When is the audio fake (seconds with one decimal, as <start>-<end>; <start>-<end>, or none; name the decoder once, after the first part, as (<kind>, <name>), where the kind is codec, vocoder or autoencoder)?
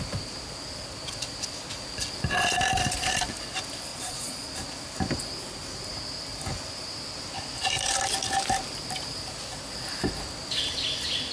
3.9-4.5 (vocoder, Vocos)